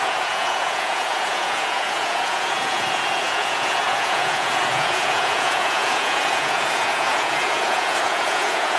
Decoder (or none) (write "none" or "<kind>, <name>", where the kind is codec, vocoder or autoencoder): vocoder, Vocos